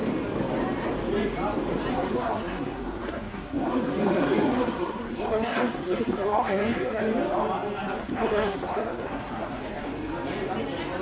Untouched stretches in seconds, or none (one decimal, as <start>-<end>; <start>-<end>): 0.0-1.9; 7.0-8.0; 9.6-11.0